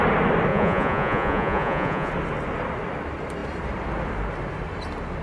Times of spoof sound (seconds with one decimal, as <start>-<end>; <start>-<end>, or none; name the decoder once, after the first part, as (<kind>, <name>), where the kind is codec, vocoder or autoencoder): 0.5-2.1 (vocoder, Vocos)